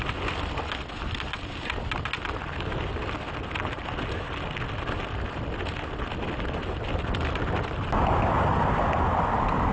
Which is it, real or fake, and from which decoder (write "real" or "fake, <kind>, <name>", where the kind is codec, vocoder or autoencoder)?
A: real